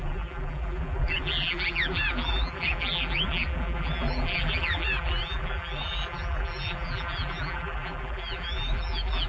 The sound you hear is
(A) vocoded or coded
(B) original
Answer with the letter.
A